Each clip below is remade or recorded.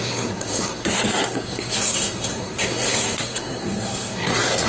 remade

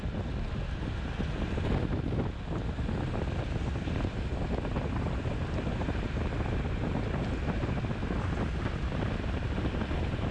recorded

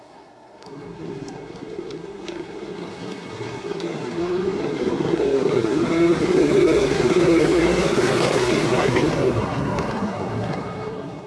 remade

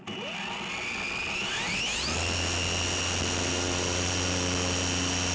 recorded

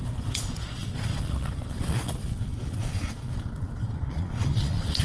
remade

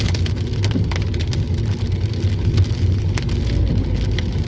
recorded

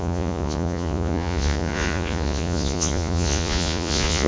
remade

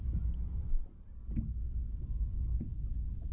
recorded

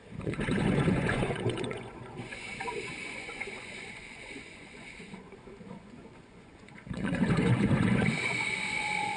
remade